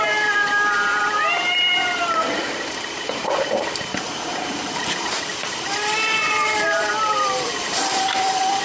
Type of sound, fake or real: fake